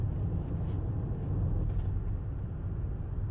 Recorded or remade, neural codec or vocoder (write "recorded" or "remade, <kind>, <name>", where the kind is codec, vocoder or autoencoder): recorded